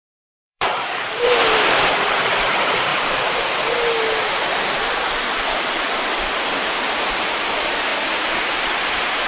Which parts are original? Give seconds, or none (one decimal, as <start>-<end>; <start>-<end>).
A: 2.9-6.5; 7.9-9.3